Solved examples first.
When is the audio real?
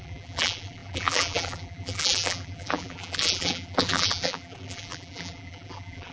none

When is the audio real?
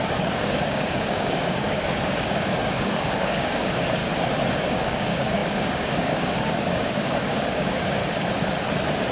4.0-4.5; 8.0-9.1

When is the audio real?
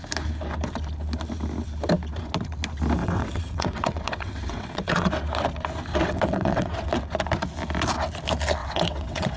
0.0-3.0; 5.1-5.9; 6.9-8.6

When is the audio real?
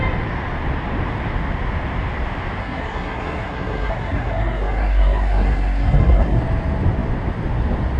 0.0-2.6; 6.4-8.0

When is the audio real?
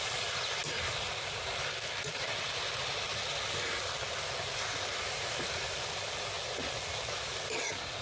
0.0-8.0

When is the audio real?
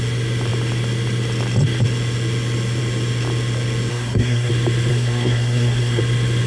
0.0-3.9; 4.5-4.9; 6.0-6.5